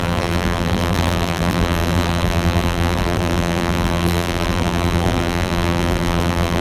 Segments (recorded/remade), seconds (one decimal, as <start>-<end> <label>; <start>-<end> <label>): 0.0-6.6 remade